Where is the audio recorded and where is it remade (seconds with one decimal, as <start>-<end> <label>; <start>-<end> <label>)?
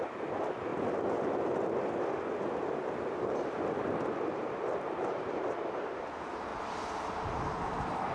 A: 0.0-0.7 remade; 0.7-2.9 recorded; 2.9-6.5 remade; 6.5-7.1 recorded; 7.1-8.1 remade